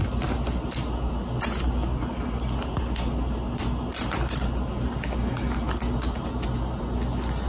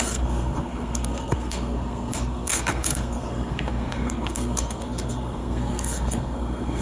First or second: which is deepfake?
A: second